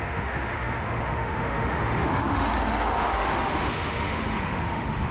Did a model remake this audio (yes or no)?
yes